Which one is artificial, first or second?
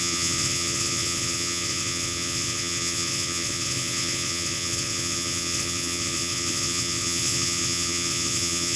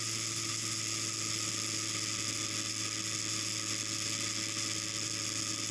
first